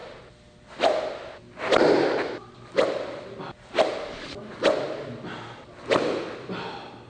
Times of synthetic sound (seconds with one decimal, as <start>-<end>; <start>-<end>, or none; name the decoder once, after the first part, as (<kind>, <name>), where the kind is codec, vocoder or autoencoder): none